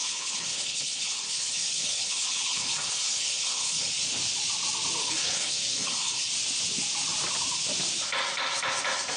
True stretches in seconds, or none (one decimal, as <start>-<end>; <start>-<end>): 3.9-5.0; 6.3-9.2